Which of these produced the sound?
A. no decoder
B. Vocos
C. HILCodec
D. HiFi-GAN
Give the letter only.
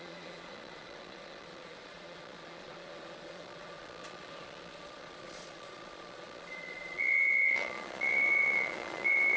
B